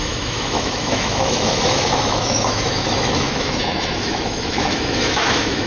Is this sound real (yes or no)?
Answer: no